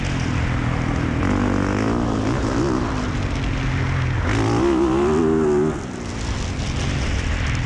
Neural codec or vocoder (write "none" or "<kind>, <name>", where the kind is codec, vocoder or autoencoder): none